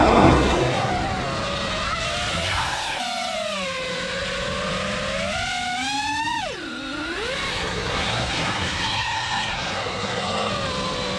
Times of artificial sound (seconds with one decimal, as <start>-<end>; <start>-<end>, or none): 0.0-0.9; 2.3-3.0; 7.5-10.5